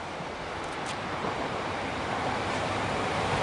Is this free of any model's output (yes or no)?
yes